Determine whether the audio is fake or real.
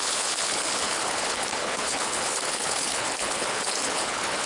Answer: fake